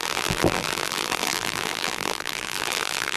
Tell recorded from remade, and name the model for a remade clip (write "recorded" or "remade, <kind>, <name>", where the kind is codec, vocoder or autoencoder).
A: remade, vocoder, BigVGAN v2